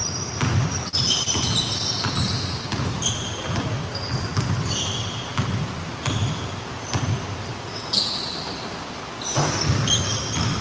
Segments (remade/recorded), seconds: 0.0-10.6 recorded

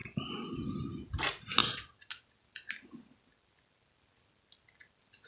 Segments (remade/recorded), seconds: 0.0-5.3 recorded

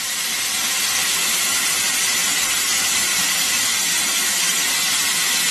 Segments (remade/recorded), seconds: 0.0-3.1 recorded; 3.1-3.7 remade; 3.7-5.5 recorded

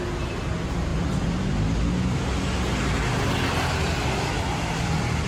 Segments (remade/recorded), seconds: 0.0-5.3 recorded

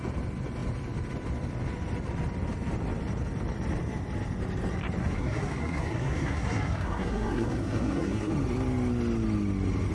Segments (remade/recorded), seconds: 0.0-5.0 recorded; 5.0-8.3 remade; 8.3-9.9 recorded

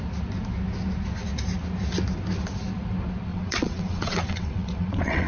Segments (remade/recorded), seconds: 0.0-3.3 recorded; 3.3-5.3 remade

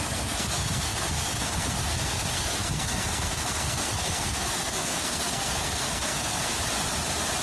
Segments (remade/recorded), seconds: 0.0-6.5 remade; 6.5-7.4 recorded